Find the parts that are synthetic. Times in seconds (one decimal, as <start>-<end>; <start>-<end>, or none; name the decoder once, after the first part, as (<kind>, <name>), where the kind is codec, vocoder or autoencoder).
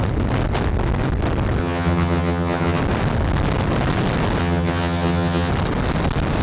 1.6-2.8 (vocoder, HiFi-GAN); 4.4-5.5